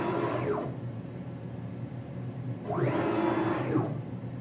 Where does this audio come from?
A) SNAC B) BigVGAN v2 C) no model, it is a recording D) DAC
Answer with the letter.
C